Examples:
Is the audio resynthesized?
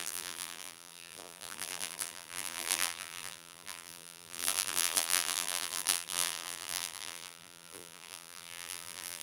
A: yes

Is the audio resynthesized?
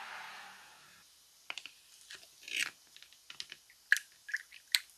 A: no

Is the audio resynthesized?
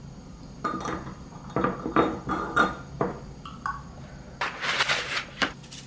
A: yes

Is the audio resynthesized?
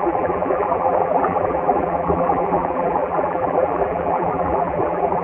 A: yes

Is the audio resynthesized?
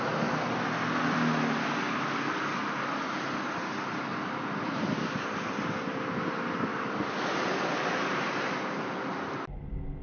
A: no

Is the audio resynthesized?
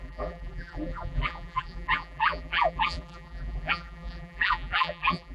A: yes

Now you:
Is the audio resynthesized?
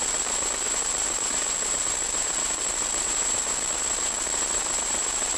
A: yes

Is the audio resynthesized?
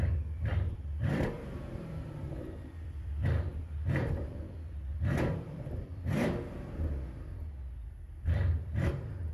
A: yes